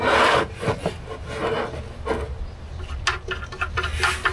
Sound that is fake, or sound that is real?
real